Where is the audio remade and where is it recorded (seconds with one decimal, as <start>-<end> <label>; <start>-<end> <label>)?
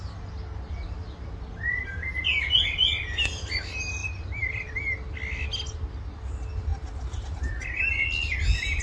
0.0-1.0 recorded; 1.0-3.0 remade; 3.0-4.0 recorded; 4.0-4.7 remade; 4.7-8.8 recorded